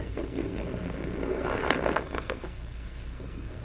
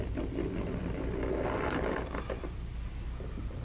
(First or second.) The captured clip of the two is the second